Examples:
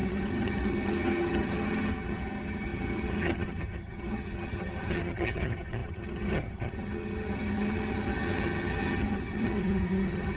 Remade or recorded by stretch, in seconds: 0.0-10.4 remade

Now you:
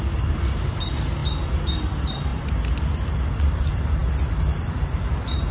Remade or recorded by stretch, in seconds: 0.0-5.5 recorded